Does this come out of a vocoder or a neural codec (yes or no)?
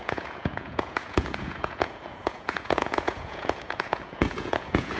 yes